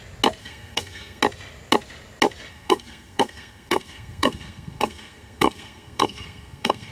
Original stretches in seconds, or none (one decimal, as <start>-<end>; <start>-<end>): 0.0-0.4; 1.2-2.5